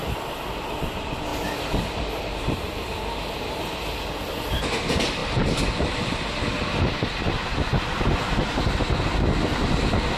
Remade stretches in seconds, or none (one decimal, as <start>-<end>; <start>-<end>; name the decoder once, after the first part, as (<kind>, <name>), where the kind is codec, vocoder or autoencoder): none